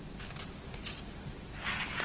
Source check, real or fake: real